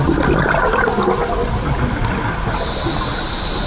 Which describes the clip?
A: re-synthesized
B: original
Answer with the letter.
B